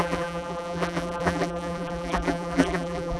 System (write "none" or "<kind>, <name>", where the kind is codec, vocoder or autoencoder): vocoder, BigVGAN v2